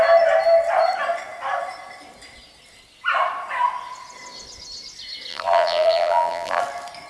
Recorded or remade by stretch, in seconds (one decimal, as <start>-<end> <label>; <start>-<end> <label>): 0.0-5.3 recorded; 5.3-6.6 remade; 6.6-7.1 recorded